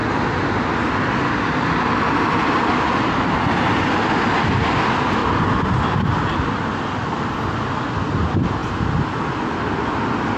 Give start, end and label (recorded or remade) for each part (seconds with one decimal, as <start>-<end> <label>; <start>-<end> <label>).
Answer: 0.0-10.4 recorded